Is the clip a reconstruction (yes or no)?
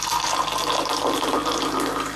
no